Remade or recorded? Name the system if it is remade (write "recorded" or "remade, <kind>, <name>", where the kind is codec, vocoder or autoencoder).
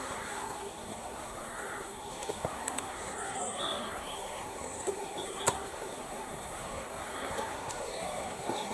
remade, codec, SNAC